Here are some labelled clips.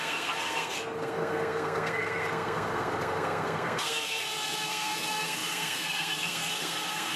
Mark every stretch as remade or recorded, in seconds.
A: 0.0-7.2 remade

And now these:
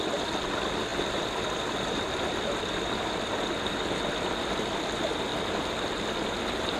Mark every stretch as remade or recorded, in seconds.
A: 0.0-6.8 recorded

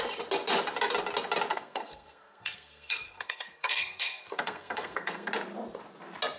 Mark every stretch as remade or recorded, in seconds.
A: 0.0-1.5 recorded; 1.5-5.3 remade; 5.3-6.4 recorded

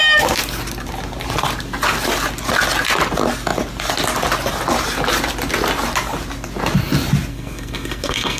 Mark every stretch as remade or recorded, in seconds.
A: 0.0-7.3 recorded; 7.3-8.4 remade

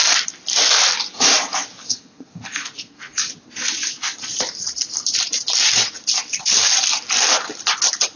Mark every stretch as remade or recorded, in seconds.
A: 0.0-1.8 recorded; 1.8-3.2 remade; 3.2-8.2 recorded

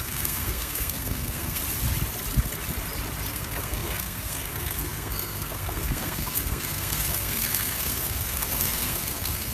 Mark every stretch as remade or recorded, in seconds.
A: 0.0-1.6 remade; 1.6-3.3 recorded; 3.3-9.5 remade

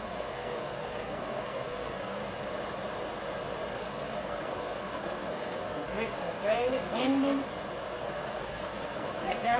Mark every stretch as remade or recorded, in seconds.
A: 0.0-2.2 remade; 2.2-3.7 recorded; 3.7-7.4 remade; 7.4-8.0 recorded; 8.0-9.6 remade